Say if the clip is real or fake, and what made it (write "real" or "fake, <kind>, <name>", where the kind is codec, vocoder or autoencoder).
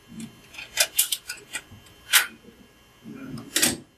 real